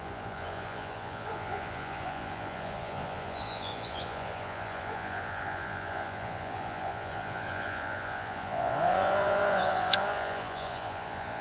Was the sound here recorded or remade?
remade